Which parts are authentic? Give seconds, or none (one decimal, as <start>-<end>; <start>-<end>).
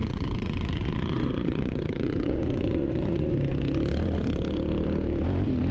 3.3-5.7